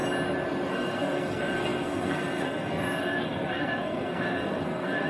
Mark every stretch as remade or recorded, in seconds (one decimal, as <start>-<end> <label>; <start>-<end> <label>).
0.0-0.7 recorded; 0.7-5.1 remade